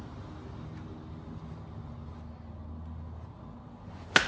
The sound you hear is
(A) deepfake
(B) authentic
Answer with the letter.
B